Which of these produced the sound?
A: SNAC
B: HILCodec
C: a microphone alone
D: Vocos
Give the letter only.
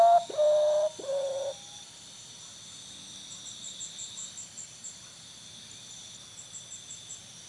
C